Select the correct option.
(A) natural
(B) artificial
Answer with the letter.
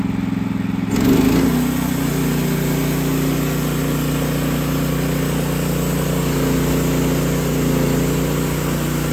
A